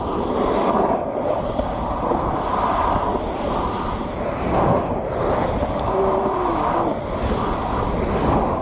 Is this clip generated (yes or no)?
no